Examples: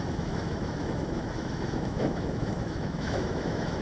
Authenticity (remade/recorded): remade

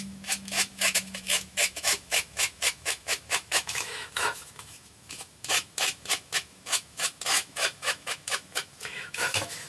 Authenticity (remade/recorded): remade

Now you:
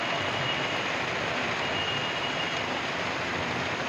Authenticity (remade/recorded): recorded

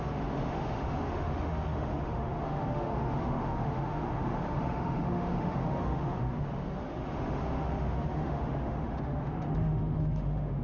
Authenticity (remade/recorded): remade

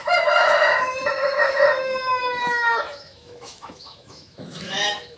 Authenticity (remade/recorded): remade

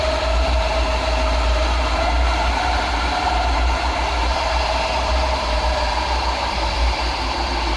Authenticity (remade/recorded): recorded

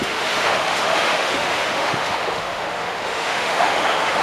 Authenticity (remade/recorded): remade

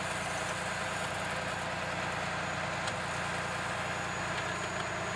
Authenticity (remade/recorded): recorded